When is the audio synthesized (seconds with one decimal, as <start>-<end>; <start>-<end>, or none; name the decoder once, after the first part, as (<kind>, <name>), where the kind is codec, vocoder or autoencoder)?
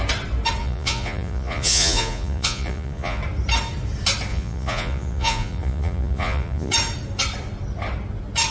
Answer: 0.6-3.2 (vocoder, Vocos); 4.3-6.7